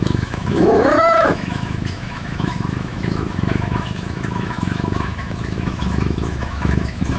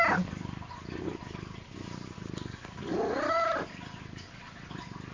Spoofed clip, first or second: first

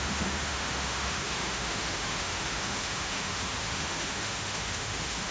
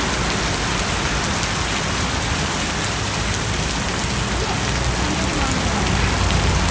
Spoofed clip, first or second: first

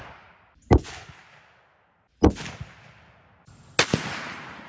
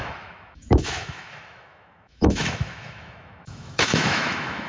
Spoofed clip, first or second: second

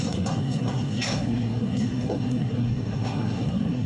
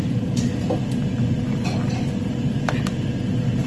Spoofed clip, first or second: first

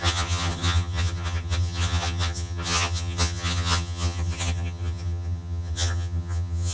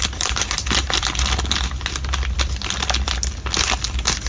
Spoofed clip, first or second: first